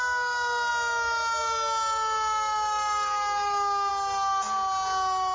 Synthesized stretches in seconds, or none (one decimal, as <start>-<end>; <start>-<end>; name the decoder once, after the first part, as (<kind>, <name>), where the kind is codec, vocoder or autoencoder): none